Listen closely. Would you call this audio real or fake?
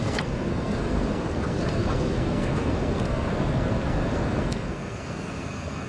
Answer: fake